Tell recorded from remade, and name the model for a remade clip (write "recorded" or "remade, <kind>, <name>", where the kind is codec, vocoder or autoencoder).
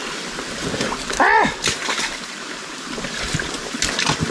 remade, vocoder, BigVGAN v2